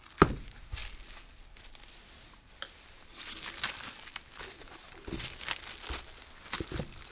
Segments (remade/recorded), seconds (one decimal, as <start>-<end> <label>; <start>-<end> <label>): 0.0-7.1 recorded